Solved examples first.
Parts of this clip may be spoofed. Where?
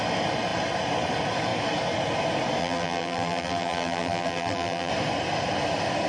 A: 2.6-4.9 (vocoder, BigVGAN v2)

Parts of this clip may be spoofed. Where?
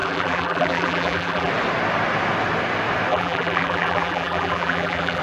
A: 0.0-1.5 (vocoder, BigVGAN v2); 3.1-5.2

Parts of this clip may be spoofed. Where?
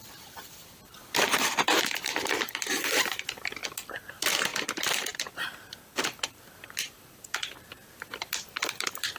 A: 0.0-3.6 (vocoder, BigVGAN v2); 4.1-9.2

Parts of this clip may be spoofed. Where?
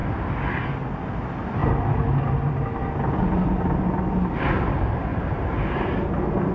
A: 5.1-5.6 (vocoder, BigVGAN v2)